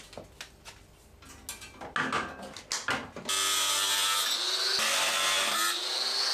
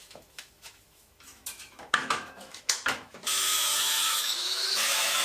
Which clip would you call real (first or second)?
first